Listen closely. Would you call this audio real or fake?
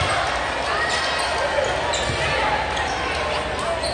real